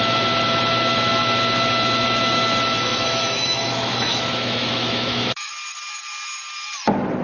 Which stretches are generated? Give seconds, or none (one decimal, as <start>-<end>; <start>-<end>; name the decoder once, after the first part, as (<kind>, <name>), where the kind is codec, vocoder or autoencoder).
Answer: 2.9-5.5 (autoencoder, DAC-VAE)